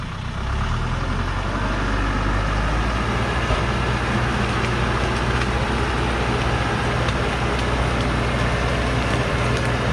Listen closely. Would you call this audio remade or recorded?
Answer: recorded